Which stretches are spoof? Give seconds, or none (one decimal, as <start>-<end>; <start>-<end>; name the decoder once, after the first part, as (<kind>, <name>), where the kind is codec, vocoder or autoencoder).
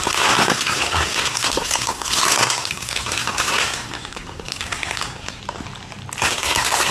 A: 0.0-5.4 (codec, SNAC); 6.2-6.9